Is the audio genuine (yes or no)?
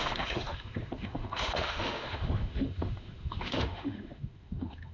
no